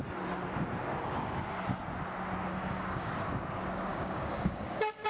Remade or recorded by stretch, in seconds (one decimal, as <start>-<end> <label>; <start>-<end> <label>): 0.0-2.5 recorded; 2.5-3.1 remade; 3.1-3.9 recorded; 3.9-5.1 remade